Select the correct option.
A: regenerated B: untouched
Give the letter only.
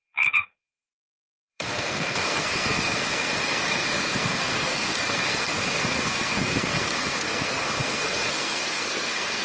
A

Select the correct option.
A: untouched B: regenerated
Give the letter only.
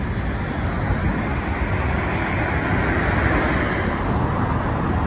A